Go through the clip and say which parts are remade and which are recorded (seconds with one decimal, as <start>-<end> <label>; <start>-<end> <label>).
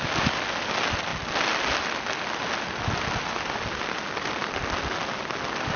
0.0-5.8 recorded